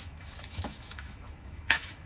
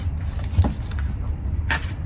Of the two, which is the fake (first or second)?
first